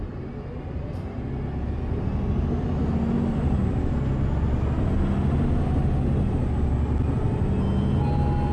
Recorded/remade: recorded